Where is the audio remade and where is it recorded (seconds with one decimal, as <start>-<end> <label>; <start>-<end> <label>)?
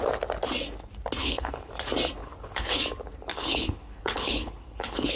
0.0-1.2 recorded; 1.2-1.7 remade; 1.7-2.2 recorded; 2.2-2.8 remade; 2.8-3.3 recorded; 3.3-5.2 remade